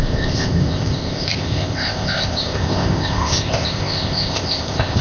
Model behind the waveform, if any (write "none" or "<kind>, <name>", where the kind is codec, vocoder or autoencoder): codec, ZipCodec